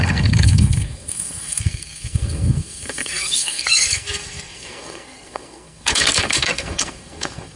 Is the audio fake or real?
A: fake